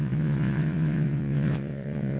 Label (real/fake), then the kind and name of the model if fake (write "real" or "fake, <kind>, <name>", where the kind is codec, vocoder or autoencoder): fake, vocoder, WaveNeXt